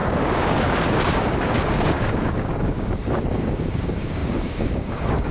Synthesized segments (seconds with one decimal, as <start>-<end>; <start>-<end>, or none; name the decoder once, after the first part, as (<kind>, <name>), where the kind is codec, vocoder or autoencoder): 0.0-5.3 (codec, DAC)